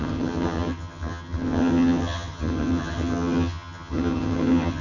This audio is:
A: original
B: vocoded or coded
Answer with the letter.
B